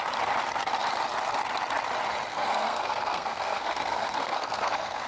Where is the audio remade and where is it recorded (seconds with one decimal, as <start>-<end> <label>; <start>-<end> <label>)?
0.0-2.3 recorded; 2.3-5.1 remade